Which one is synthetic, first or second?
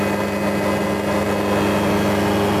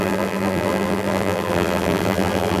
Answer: second